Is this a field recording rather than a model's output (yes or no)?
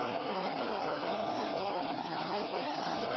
no